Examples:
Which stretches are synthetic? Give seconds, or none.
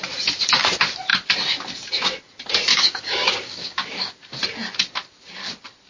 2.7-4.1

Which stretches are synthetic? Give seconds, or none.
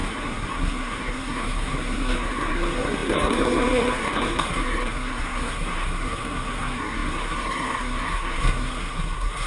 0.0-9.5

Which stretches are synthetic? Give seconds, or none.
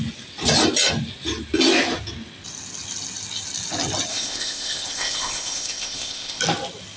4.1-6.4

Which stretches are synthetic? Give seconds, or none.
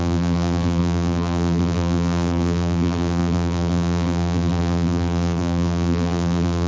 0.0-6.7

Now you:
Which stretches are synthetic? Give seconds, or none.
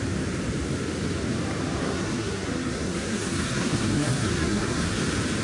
1.8-5.0